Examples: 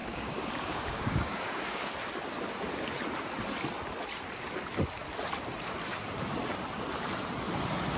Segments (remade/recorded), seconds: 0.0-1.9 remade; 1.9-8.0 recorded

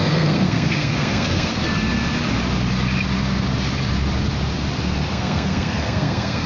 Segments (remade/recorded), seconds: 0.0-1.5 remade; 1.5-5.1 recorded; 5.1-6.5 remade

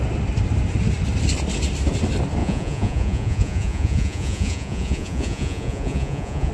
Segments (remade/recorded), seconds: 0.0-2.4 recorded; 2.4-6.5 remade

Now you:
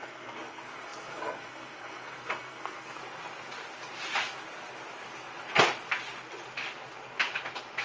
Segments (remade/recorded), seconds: 0.0-3.0 remade; 3.0-7.8 recorded

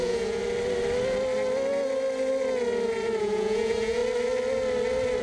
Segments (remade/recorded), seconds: 0.0-0.4 remade; 0.4-3.2 recorded; 3.2-4.0 remade; 4.0-5.2 recorded

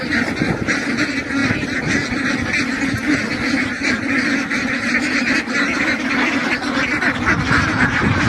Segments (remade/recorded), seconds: 0.0-8.3 recorded

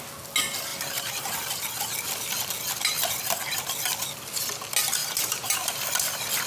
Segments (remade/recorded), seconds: 0.0-0.7 recorded; 0.7-1.3 remade; 1.3-5.0 recorded; 5.0-5.7 remade; 5.7-6.5 recorded

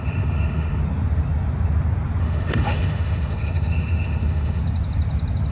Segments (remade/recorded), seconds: 0.0-0.8 remade; 0.8-2.2 recorded; 2.2-4.6 remade; 4.6-5.5 recorded